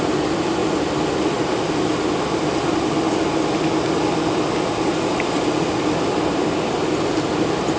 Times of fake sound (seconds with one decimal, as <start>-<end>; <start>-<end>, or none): none